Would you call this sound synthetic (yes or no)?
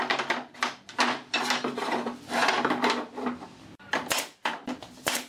no